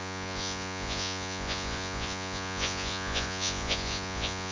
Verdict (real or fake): fake